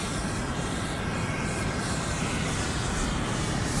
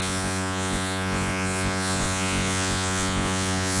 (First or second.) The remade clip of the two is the second